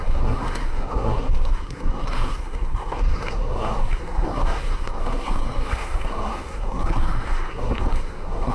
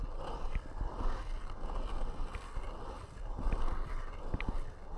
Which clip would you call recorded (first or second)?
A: second